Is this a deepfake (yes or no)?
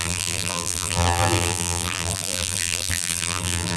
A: yes